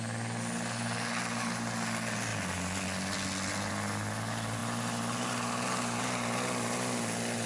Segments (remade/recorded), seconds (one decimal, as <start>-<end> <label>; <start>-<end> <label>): 0.0-7.5 recorded